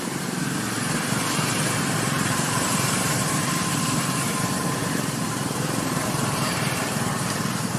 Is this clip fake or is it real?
fake